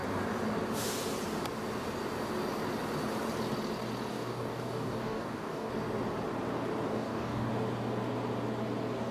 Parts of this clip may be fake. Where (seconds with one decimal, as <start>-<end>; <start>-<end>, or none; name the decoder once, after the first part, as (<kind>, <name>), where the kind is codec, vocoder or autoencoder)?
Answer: 4.1-5.7 (codec, DAC); 6.9-7.5